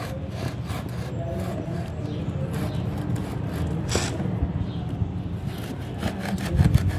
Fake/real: real